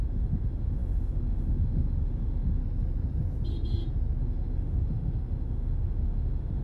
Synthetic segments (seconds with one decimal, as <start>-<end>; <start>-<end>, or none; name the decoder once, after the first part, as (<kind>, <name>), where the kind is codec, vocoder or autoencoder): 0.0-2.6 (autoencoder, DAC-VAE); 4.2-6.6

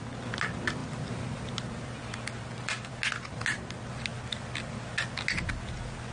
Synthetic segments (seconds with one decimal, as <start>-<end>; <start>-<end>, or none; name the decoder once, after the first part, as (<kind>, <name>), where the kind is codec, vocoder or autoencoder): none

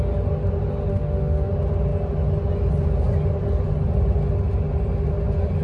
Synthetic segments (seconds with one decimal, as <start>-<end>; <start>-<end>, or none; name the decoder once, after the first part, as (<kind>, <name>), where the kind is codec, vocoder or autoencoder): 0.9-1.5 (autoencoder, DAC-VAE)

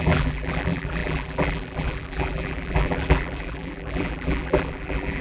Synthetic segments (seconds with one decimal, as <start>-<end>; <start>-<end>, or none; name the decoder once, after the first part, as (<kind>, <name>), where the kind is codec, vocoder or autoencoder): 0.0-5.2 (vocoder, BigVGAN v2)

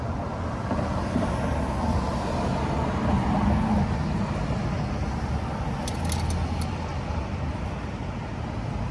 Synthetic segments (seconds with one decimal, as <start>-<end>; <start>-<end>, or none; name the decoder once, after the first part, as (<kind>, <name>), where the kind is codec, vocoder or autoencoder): 6.9-7.8 (vocoder, BigVGAN v2)

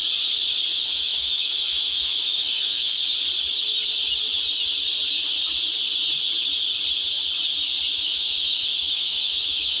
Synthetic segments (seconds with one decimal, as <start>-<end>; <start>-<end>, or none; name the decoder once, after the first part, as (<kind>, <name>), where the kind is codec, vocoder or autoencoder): 0.7-3.0 (autoencoder, DAC-VAE); 7.9-9.8